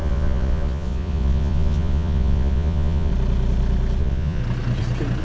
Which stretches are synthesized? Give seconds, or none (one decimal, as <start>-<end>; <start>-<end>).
0.0-3.1; 4.0-4.4